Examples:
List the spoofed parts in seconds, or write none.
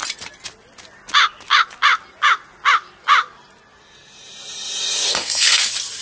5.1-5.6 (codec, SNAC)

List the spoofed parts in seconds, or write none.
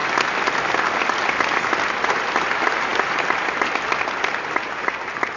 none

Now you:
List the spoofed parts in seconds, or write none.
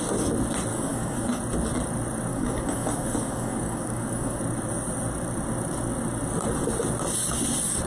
0.7-1.4 (codec, DAC); 2.3-4.4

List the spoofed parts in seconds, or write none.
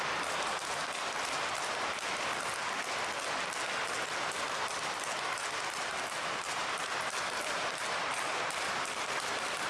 0.0-2.6 (vocoder, BigVGAN v2); 5.9-9.7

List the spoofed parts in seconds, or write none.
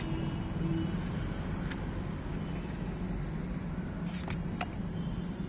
none